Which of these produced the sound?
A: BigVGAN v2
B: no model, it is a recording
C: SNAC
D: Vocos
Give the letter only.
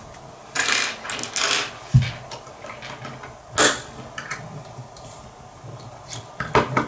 B